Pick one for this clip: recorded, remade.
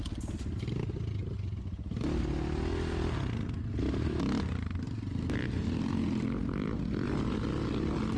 recorded